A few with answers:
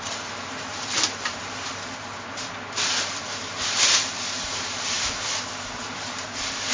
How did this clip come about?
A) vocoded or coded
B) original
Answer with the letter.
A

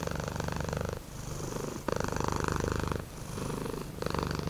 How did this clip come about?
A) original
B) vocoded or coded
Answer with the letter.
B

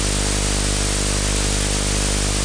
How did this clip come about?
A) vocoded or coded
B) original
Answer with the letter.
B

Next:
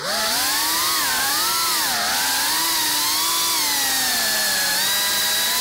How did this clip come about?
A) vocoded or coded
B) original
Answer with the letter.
B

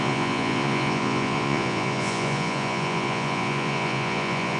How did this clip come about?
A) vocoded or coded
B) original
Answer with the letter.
A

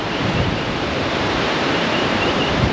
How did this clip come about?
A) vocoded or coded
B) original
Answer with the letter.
A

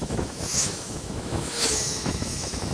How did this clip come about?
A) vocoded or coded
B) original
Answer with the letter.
A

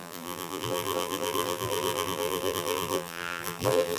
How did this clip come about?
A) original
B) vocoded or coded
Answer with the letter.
B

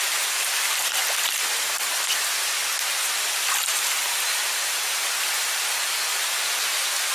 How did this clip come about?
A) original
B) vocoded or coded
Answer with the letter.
A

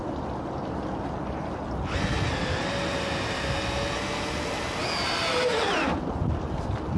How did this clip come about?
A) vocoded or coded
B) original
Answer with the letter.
B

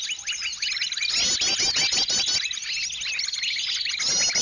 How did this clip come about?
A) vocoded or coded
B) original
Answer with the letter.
B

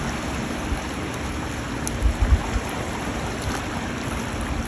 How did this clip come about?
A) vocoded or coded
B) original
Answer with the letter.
B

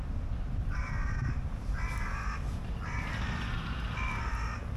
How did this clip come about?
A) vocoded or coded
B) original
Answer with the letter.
B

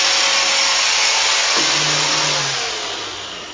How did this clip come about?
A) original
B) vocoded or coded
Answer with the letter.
A